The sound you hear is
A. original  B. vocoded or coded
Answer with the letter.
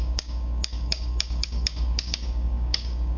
B